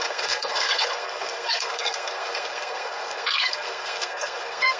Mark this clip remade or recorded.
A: remade